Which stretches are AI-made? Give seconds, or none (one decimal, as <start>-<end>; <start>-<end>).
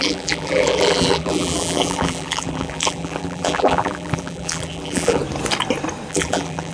0.0-5.2; 6.1-6.7